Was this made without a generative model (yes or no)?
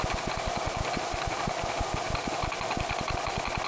yes